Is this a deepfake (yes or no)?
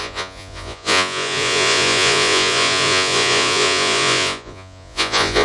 yes